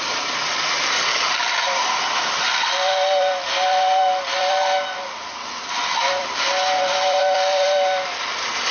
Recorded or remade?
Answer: remade